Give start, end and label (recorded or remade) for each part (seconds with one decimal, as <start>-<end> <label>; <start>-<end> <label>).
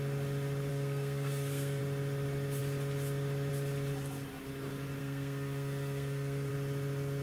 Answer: 0.0-0.7 recorded; 0.7-1.8 remade; 1.8-5.0 recorded; 5.0-6.5 remade; 6.5-7.2 recorded